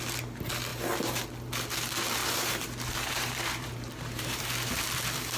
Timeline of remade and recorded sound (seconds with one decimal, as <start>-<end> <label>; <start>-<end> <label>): 0.0-2.2 recorded; 2.2-4.5 remade; 4.5-5.4 recorded